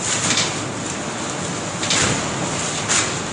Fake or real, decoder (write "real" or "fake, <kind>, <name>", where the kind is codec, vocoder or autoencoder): real